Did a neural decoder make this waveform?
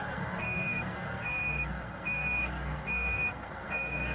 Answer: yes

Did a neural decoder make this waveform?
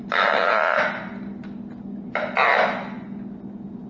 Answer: no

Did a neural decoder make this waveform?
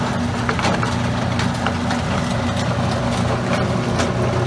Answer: no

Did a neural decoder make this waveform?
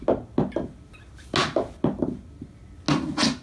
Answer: no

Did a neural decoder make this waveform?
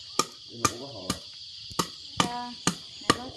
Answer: no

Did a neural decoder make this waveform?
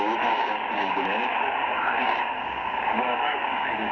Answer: yes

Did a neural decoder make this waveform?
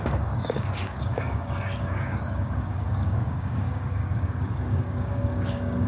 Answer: yes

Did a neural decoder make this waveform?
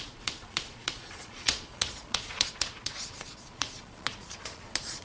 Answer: yes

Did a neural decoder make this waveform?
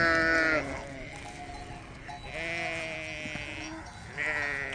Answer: no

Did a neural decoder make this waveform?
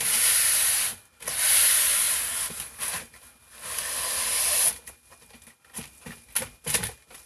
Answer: no